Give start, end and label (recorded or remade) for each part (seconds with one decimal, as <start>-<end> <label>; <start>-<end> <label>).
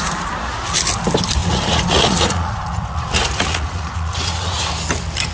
0.0-1.4 recorded; 1.4-4.6 remade; 4.6-5.3 recorded